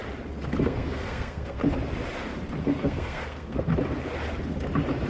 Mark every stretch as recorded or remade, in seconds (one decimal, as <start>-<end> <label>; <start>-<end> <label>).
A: 0.0-0.6 recorded; 0.6-1.6 remade; 1.6-2.6 recorded; 2.6-3.7 remade; 3.7-5.1 recorded